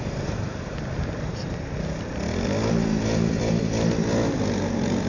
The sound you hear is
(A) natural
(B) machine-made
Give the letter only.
A